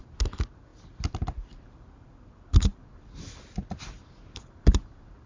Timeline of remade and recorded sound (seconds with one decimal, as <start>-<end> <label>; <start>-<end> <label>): 0.0-5.3 recorded